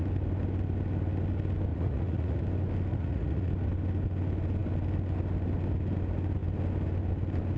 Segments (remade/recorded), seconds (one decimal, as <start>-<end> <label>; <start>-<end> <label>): 0.0-1.7 recorded; 1.7-2.4 remade; 2.4-2.9 recorded; 2.9-3.5 remade; 3.5-7.6 recorded

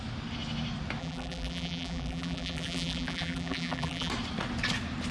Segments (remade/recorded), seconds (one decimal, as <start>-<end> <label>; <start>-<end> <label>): 0.0-1.0 recorded; 1.0-4.1 remade; 4.1-5.1 recorded

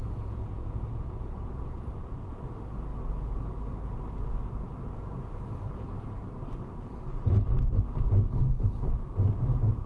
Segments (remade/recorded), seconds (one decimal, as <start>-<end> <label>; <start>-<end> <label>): 0.0-2.3 remade; 2.3-9.9 recorded

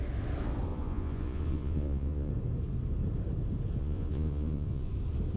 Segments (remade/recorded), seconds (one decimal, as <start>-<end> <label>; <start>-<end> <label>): 0.0-0.7 recorded; 0.7-2.3 remade; 2.3-3.8 recorded; 3.8-4.9 remade; 4.9-5.4 recorded

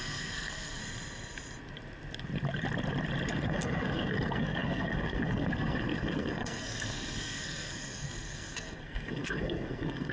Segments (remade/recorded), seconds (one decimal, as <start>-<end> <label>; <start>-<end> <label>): 0.0-0.8 remade; 0.8-3.3 recorded; 3.3-10.1 remade

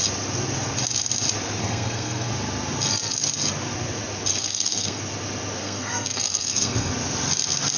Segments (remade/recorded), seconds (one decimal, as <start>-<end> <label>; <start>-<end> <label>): 0.0-1.6 recorded; 1.6-2.3 remade; 2.3-4.3 recorded; 4.3-5.0 remade; 5.0-5.6 recorded; 5.6-6.9 remade; 6.9-7.8 recorded